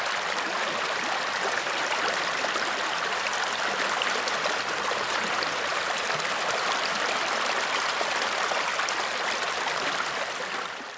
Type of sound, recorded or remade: remade